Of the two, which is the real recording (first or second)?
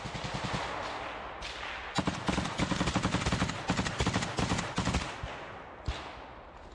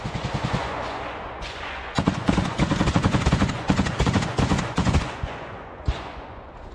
first